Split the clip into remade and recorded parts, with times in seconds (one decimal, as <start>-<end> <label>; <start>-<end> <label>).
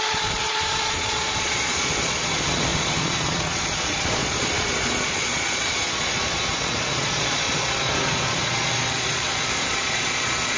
0.0-10.6 remade